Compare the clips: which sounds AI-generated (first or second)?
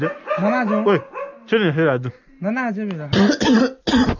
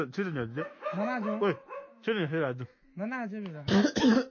second